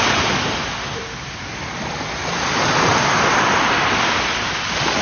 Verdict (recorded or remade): recorded